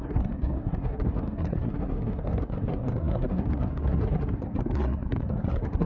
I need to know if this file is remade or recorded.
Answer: remade